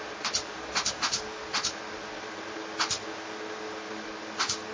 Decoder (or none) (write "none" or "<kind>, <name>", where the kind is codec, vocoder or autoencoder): none